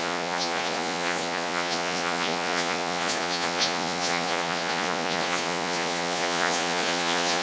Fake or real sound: fake